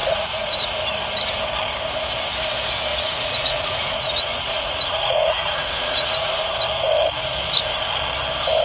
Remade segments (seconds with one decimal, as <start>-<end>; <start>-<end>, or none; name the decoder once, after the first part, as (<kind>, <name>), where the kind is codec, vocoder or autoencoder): 0.0-0.7 (vocoder, Vocos); 2.9-6.3